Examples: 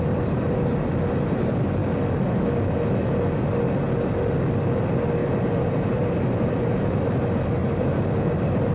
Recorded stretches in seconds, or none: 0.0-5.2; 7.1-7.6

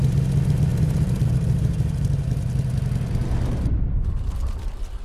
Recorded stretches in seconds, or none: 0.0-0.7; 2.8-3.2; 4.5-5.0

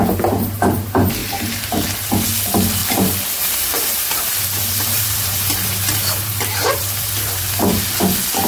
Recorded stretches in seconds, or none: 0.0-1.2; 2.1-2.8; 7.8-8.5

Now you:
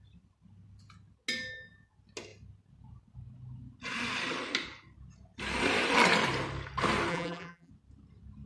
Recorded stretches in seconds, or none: 0.0-7.1; 7.7-8.5

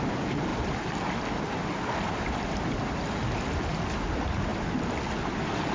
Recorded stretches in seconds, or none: 0.0-5.7

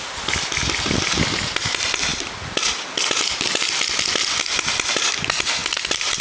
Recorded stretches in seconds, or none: 0.0-5.6

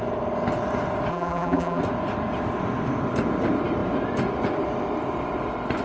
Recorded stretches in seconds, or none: 0.0-1.1; 1.8-5.8

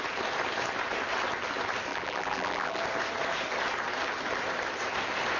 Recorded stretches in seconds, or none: 0.0-1.9; 2.8-5.4